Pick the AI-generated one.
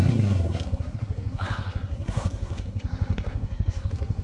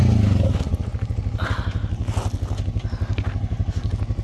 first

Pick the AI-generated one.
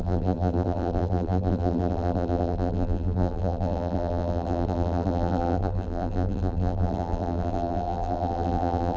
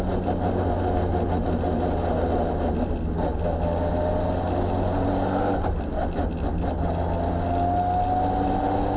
first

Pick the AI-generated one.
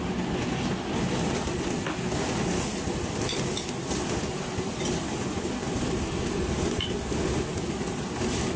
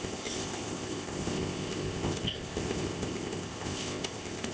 second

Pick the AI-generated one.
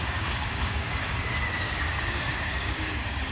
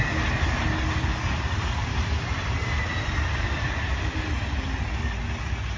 first